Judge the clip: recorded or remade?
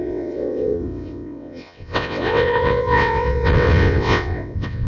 remade